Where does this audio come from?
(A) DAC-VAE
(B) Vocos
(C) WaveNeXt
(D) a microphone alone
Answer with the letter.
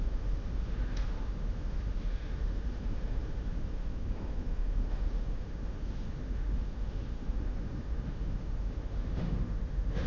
A